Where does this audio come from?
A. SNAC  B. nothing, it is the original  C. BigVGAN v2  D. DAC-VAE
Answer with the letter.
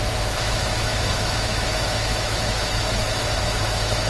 D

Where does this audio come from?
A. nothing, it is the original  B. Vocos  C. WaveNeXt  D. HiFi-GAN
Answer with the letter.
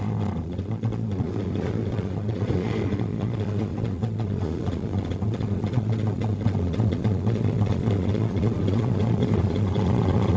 B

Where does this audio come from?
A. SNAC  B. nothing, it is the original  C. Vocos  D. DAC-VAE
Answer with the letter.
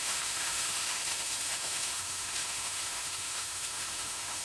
D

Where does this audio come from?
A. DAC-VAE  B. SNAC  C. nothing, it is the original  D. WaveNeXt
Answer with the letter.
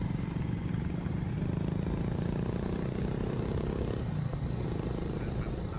C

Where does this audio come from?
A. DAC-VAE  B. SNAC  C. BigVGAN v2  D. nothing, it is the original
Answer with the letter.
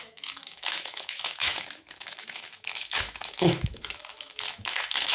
A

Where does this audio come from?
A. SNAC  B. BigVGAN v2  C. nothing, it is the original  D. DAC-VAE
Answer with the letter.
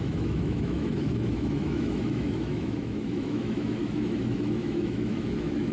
D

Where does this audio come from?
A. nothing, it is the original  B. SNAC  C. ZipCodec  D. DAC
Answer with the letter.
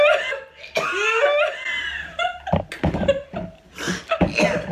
A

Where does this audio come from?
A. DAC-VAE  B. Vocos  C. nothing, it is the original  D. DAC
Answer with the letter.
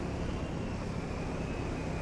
C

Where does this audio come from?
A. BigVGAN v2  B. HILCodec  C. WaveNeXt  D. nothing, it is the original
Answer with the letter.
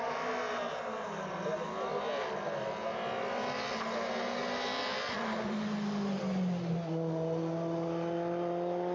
D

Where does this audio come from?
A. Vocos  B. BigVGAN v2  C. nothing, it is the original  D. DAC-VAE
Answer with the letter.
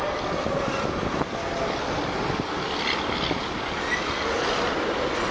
C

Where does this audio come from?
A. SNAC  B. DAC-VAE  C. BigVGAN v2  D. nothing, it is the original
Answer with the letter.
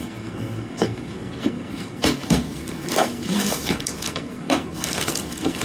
A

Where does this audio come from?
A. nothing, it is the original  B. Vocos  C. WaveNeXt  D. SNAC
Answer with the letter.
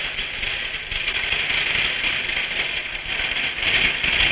A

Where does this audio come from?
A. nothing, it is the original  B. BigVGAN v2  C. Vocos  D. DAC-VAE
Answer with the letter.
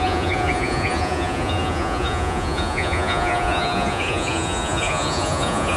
C